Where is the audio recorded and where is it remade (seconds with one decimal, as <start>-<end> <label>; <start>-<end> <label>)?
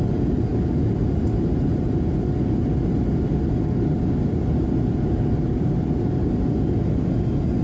0.0-7.6 recorded